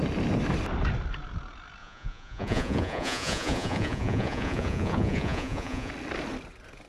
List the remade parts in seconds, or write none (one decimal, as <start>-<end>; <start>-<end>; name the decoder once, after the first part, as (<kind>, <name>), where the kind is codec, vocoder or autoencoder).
1.8-5.9 (vocoder, Vocos)